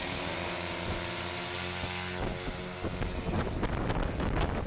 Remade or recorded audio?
recorded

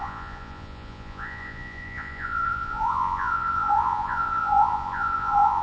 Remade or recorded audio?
remade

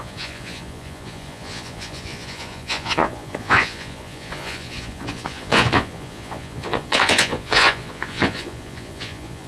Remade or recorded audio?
remade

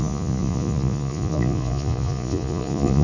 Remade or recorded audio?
remade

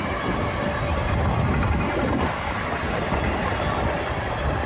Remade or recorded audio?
recorded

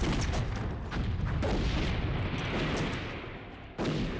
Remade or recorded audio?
recorded